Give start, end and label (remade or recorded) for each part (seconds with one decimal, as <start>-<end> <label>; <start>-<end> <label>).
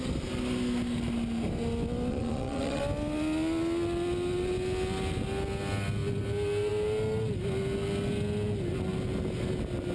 0.0-2.1 recorded; 2.1-2.8 remade; 2.8-9.9 recorded